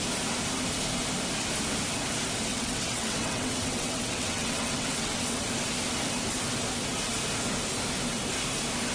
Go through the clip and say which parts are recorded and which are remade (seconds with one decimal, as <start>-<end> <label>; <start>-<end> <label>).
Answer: 0.0-2.5 recorded; 2.5-5.4 remade; 5.4-8.9 recorded